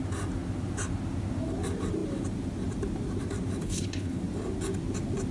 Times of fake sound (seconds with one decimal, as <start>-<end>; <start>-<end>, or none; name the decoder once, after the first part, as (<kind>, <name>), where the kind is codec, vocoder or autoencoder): 3.6-4.2 (codec, HILCodec)

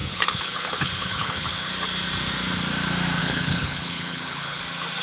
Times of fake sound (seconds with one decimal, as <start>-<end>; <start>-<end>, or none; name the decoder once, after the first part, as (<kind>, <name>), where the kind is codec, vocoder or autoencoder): 0.0-1.7 (codec, HILCodec); 3.2-4.6

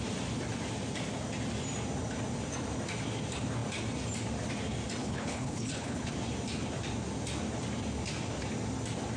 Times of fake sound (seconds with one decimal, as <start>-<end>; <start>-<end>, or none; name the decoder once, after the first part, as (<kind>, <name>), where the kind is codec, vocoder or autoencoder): 5.0-6.1 (codec, HILCodec)

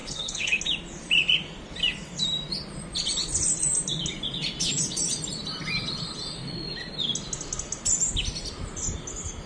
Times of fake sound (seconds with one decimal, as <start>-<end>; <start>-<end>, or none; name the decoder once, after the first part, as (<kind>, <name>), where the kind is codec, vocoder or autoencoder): 0.0-0.6 (codec, HILCodec)

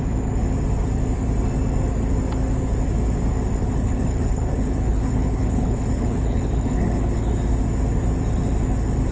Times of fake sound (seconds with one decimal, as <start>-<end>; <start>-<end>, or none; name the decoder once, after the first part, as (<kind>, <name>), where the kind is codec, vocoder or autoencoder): 3.6-7.3 (codec, HILCodec)